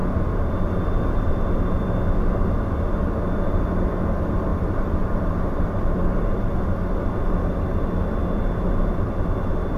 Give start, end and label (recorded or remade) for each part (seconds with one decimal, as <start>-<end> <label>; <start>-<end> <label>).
0.0-4.5 recorded; 4.5-6.5 remade; 6.5-9.8 recorded